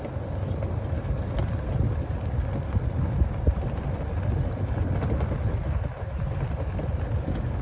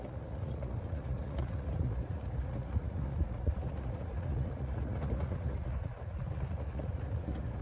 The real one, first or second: first